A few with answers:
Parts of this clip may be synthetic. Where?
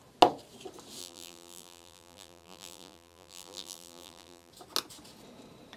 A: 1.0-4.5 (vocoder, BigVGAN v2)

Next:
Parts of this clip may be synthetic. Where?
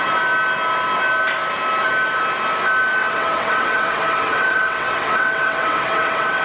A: 3.0-6.4 (vocoder, WaveNeXt)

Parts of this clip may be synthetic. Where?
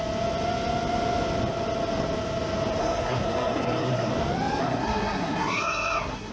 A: 2.8-4.1 (codec, SNAC); 4.6-6.3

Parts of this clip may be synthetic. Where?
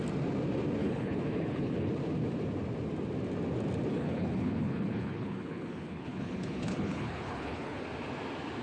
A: 0.8-1.9 (codec, HILCodec); 3.9-7.8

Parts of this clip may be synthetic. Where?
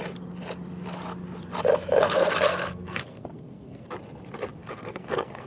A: 2.0-3.9 (codec, SNAC); 4.6-5.5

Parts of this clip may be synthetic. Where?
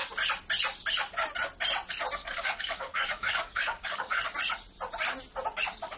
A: 2.2-4.2 (codec, DAC)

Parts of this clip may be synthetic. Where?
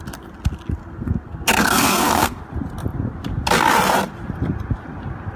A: 0.8-2.4 (codec, SNAC)